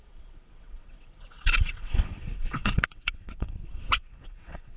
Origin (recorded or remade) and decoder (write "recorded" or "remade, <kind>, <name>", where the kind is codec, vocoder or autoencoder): remade, vocoder, WaveNeXt